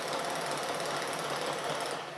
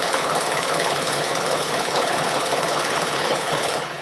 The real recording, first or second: first